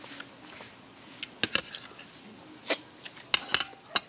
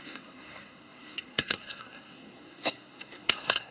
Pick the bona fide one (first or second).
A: first